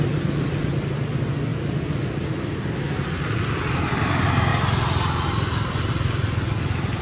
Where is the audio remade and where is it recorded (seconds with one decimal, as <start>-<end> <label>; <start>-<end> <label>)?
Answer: 0.0-7.0 recorded